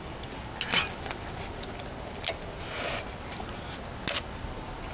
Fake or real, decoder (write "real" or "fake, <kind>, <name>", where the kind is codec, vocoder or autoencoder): real